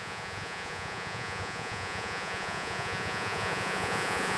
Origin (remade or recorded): remade